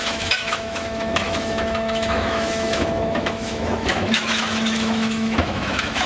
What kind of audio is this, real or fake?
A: fake